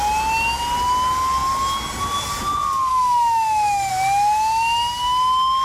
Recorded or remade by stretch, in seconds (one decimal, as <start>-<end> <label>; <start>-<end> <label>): 0.0-2.9 recorded; 2.9-3.9 remade; 3.9-5.6 recorded